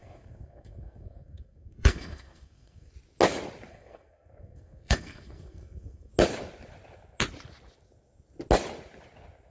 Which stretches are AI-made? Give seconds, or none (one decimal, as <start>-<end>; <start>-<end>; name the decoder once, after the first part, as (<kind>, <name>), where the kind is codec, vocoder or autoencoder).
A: 0.0-2.9 (codec, SNAC); 3.7-6.1